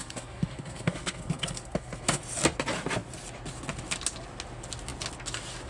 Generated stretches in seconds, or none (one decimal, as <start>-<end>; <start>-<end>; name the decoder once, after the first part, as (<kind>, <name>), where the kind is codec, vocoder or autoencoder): 0.0-2.2 (codec, SNAC)